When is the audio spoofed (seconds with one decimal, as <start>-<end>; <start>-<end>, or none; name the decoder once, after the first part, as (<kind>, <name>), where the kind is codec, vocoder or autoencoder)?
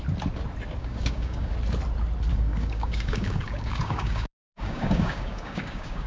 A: 0.8-1.5 (codec, DAC); 2.3-6.1